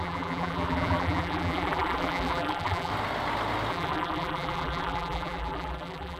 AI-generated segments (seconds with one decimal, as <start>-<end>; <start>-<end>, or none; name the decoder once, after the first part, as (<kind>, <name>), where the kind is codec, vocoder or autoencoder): 0.0-2.9 (vocoder, BigVGAN v2); 3.7-6.2